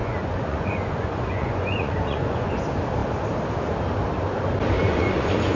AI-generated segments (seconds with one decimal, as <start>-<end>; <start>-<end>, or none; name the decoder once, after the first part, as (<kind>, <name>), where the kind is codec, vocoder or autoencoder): 0.0-2.5 (vocoder, Vocos); 4.8-5.6